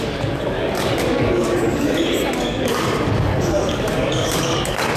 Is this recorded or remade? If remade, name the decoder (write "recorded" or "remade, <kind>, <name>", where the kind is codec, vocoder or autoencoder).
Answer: remade, codec, DAC